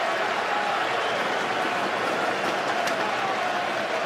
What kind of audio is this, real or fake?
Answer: real